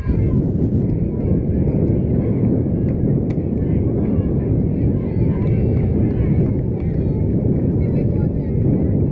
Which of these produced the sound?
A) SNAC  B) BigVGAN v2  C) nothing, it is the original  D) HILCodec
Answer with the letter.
C